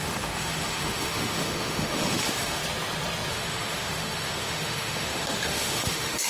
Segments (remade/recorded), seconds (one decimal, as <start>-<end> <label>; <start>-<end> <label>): 0.0-2.6 remade; 2.6-3.3 recorded; 3.3-6.3 remade